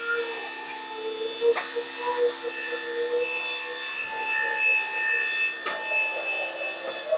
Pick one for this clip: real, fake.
real